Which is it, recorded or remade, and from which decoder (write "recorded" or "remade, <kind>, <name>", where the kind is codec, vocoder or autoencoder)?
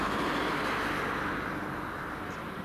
recorded